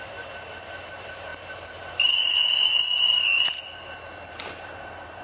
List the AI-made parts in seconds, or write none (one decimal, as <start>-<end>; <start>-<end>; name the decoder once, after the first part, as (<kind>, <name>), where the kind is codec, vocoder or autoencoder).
0.0-2.4 (vocoder, BigVGAN v2); 4.3-5.2